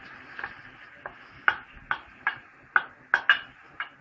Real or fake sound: real